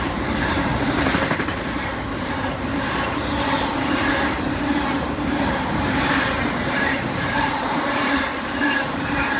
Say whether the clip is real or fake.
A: fake